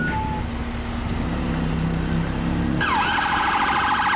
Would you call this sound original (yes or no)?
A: yes